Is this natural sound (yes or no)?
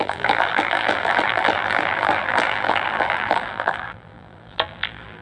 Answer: no